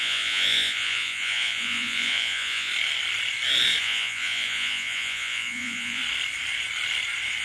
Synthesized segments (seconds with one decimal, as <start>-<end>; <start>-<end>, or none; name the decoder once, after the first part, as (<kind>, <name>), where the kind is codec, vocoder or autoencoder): 0.0-2.7 (vocoder, Vocos); 3.8-6.0